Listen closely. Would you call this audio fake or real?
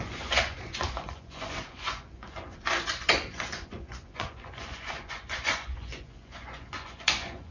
fake